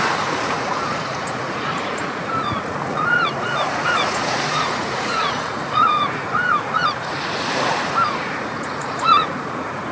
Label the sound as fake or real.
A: fake